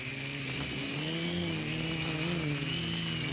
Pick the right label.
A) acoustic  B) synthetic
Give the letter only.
A